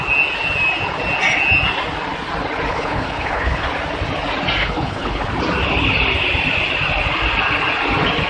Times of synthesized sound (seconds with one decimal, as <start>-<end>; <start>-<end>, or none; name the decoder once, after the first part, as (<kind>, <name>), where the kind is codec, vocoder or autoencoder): 2.7-3.7 (codec, HILCodec); 4.6-5.3